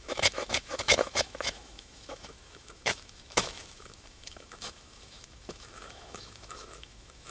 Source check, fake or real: fake